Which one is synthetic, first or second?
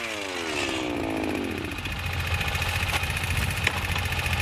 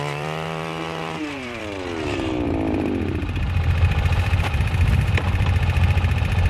second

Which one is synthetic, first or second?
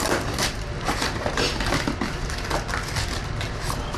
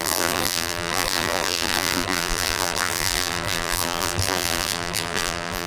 second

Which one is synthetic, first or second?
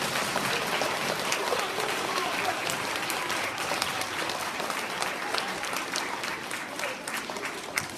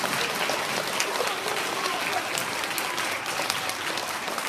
first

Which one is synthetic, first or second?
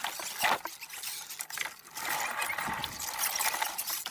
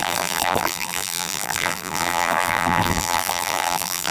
second